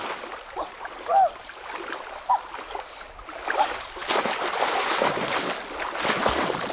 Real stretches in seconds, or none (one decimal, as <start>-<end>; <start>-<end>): 0.0-6.7